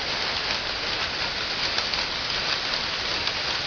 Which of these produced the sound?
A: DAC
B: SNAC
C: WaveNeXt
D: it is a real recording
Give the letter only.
D